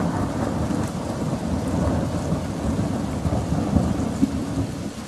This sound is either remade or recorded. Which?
recorded